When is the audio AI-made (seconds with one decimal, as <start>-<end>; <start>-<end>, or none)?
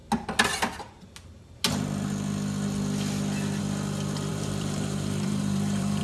4.3-6.0